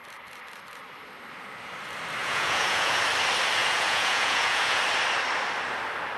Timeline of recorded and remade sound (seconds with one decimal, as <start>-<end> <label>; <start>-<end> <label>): 0.0-2.2 recorded; 2.2-3.0 remade; 3.0-3.6 recorded; 3.6-4.8 remade; 4.8-6.2 recorded